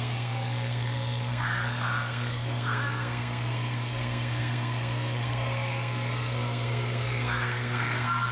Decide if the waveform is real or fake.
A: fake